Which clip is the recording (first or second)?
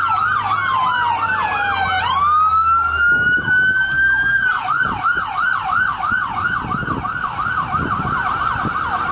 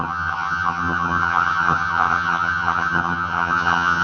first